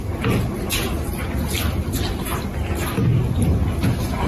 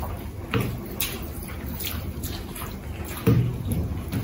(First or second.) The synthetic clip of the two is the first